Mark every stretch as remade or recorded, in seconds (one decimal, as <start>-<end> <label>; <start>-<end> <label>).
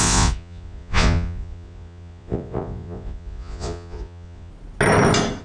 0.0-4.5 remade; 4.5-5.4 recorded